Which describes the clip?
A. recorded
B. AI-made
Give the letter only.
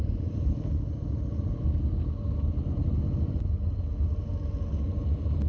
A